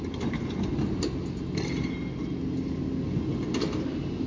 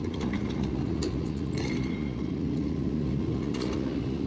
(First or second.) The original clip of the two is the first